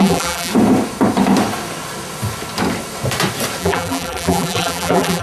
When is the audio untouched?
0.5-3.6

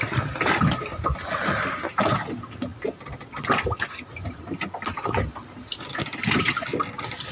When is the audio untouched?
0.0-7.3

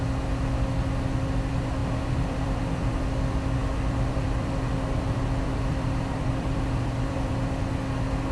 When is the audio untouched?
0.0-1.8; 2.9-3.6; 7.3-8.3

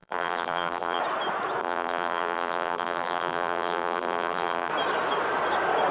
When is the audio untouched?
1.0-1.6; 4.7-5.9

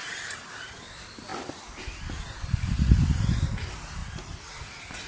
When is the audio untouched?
0.8-4.0

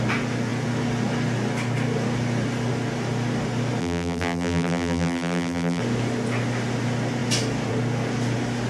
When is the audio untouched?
0.0-3.8; 5.8-8.7

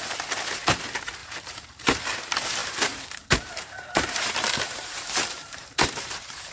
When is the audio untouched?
0.0-1.2; 2.2-2.6